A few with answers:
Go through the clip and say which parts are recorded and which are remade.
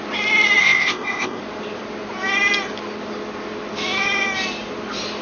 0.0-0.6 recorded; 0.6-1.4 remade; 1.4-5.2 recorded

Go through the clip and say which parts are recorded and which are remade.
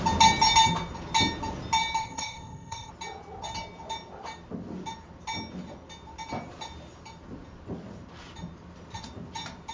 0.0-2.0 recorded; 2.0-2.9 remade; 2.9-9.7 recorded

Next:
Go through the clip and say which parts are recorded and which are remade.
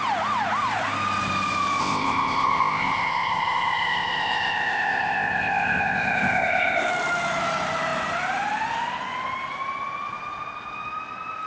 0.0-1.8 recorded; 1.8-6.9 remade; 6.9-11.5 recorded